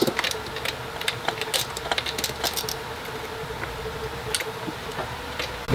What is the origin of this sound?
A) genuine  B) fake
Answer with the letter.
A